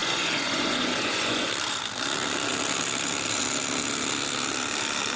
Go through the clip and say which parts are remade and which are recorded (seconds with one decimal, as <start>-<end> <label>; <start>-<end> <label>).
0.0-1.5 remade; 1.5-5.2 recorded